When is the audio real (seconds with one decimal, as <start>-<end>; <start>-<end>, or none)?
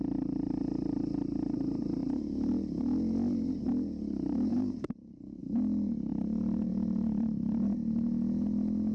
0.0-4.5; 5.4-6.1; 8.1-8.9